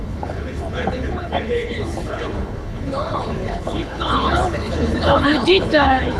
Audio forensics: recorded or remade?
remade